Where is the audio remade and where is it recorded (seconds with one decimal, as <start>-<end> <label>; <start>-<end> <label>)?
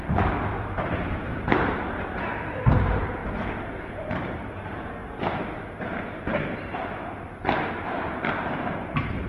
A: 0.0-3.2 remade; 3.2-3.9 recorded; 3.9-5.0 remade; 5.0-5.8 recorded; 5.8-7.0 remade; 7.0-7.7 recorded; 7.7-9.3 remade